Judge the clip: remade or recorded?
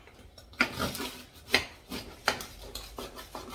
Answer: recorded